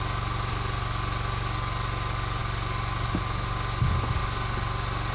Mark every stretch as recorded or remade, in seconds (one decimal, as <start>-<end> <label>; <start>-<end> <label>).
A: 0.0-5.1 recorded